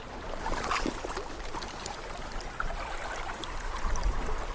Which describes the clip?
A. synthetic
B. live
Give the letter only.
B